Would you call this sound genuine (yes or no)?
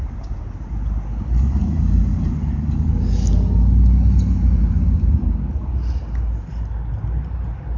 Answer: yes